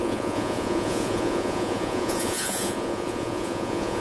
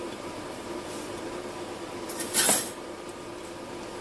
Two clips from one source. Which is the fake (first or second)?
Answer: first